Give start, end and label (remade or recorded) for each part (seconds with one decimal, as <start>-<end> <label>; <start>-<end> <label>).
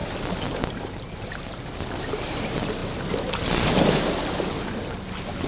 0.0-5.5 recorded